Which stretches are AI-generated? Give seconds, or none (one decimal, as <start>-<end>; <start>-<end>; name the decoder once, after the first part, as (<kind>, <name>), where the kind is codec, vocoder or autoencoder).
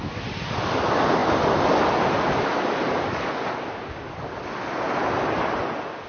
none